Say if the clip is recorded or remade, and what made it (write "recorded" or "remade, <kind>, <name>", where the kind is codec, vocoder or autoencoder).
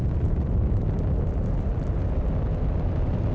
recorded